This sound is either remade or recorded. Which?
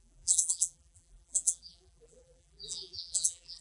remade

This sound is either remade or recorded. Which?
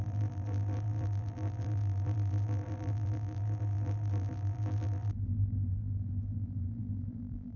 remade